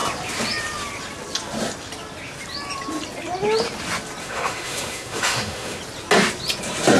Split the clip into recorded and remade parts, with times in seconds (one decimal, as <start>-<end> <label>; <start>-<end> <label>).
0.0-4.2 recorded; 4.2-5.8 remade; 5.8-7.0 recorded